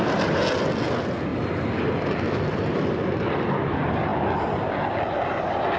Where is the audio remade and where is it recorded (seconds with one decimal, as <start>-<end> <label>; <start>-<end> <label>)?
0.0-5.8 recorded